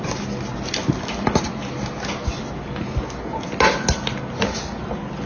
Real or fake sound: real